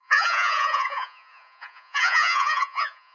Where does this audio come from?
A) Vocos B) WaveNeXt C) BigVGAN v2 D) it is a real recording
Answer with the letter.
A